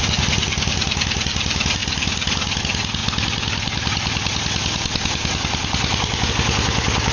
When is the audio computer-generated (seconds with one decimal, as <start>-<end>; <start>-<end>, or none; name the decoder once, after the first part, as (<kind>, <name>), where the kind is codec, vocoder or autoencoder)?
none